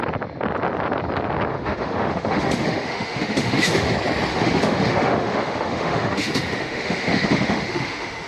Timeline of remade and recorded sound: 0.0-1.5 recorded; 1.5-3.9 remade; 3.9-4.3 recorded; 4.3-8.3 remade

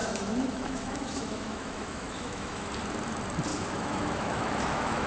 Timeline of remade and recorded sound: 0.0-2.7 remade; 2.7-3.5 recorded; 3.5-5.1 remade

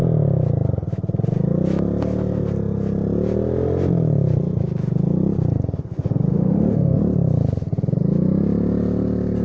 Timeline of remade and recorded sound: 0.0-6.3 recorded; 6.3-7.0 remade; 7.0-9.4 recorded

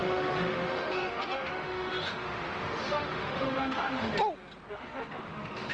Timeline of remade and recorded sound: 0.0-4.1 remade; 4.1-4.7 recorded; 4.7-5.7 remade

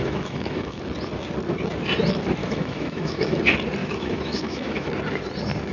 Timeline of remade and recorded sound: 0.0-0.8 remade; 0.8-2.4 recorded; 2.4-3.4 remade; 3.4-3.8 recorded; 3.8-4.9 remade; 4.9-5.7 recorded

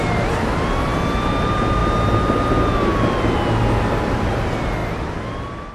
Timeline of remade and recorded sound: 0.0-5.7 recorded

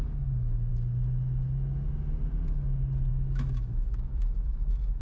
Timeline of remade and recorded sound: 0.0-0.7 remade; 0.7-3.1 recorded; 3.1-5.0 remade